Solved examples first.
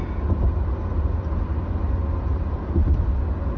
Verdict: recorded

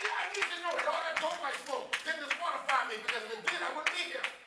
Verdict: remade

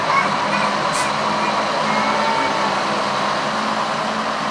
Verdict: recorded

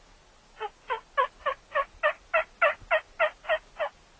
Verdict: recorded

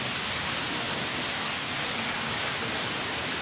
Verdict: recorded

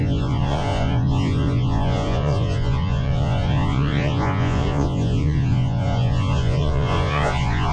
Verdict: remade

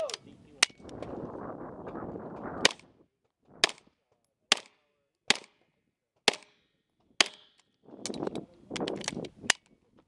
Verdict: recorded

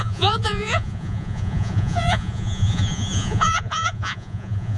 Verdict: remade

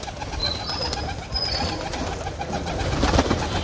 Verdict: recorded